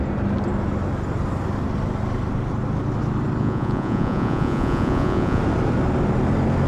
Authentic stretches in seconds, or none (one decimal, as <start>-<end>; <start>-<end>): 0.0-3.4; 5.4-6.7